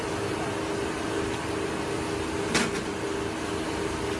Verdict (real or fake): real